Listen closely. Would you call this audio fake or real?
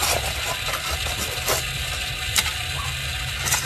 real